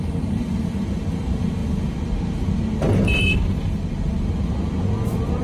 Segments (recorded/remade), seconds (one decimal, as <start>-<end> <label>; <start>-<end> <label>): 0.0-1.6 remade; 1.6-2.7 recorded; 2.7-3.4 remade; 3.4-5.4 recorded